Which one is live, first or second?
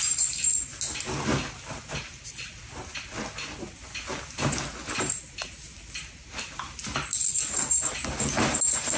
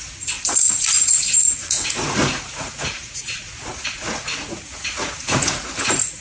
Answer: first